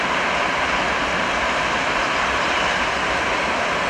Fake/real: fake